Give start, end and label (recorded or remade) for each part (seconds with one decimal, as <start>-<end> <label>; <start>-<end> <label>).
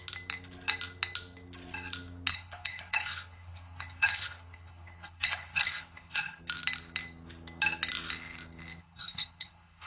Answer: 0.0-2.3 recorded; 2.3-6.4 remade; 6.4-8.8 recorded; 8.8-9.9 remade